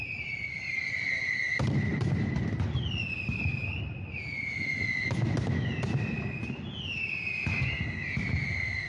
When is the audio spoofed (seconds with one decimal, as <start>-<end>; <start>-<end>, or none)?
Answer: none